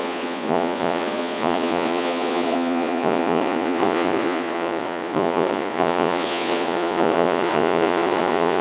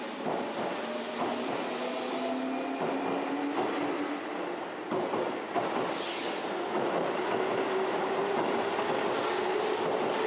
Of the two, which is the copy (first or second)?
first